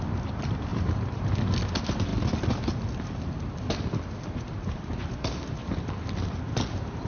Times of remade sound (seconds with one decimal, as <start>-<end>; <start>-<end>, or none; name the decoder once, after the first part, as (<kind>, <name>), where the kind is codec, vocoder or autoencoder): 0.7-1.3 (vocoder, BigVGAN v2)